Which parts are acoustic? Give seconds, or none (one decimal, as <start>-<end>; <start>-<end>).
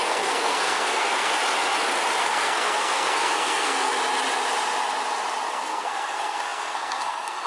1.4-2.2; 3.9-5.5